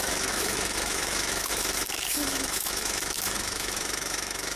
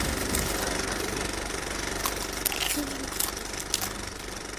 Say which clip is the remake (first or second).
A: first